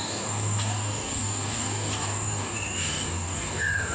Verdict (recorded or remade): remade